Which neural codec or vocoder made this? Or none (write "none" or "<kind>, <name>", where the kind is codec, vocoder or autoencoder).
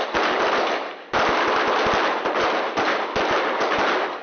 none